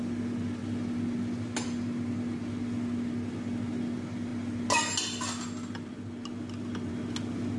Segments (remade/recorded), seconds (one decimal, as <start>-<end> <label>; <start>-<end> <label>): 0.0-7.6 recorded